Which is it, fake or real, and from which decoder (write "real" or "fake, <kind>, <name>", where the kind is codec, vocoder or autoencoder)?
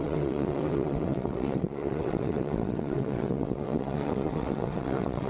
fake, vocoder, WaveNeXt